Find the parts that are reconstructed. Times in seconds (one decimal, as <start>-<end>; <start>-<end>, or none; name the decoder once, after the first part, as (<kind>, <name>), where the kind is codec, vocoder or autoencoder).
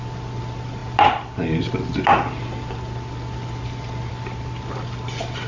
none